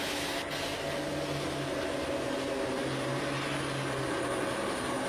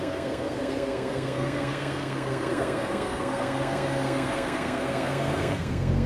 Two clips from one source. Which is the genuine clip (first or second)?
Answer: first